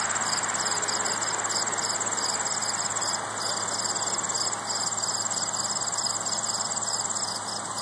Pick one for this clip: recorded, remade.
recorded